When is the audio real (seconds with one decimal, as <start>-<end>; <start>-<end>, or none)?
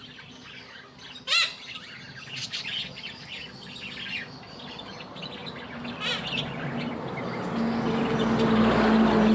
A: 0.0-9.3